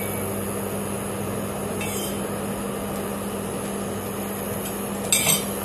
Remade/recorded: recorded